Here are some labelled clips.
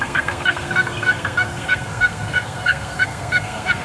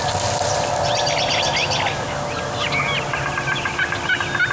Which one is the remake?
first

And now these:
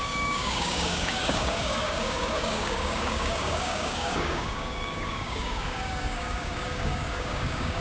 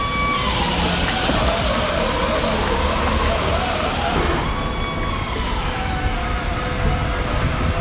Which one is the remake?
first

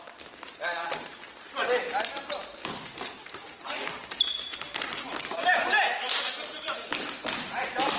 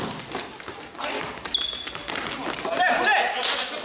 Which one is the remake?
first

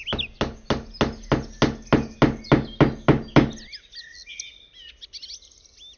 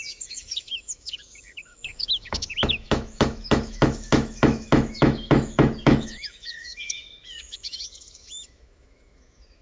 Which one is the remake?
second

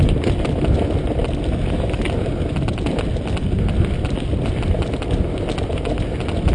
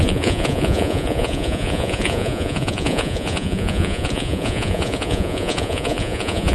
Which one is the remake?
second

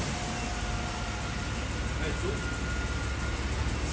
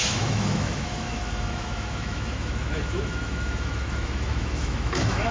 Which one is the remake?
second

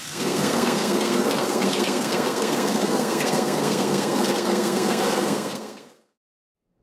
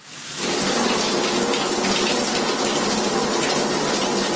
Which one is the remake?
first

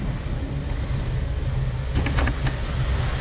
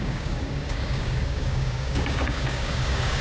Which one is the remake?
second